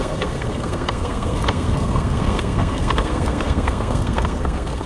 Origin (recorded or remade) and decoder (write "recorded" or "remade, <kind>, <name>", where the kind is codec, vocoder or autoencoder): remade, codec, SNAC